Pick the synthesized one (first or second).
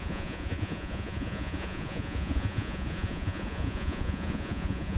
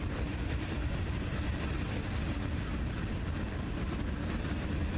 first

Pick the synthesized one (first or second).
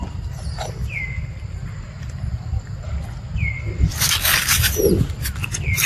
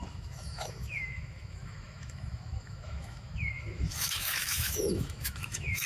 second